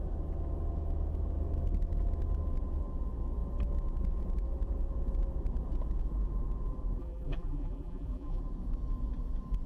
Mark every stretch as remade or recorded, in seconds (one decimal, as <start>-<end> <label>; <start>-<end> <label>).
0.0-7.0 recorded; 7.0-8.4 remade; 8.4-9.7 recorded